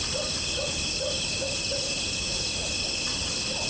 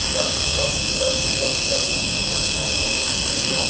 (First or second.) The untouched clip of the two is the first